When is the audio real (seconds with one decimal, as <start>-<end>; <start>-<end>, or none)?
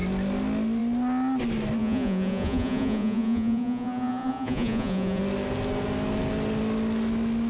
0.0-1.8; 5.2-7.5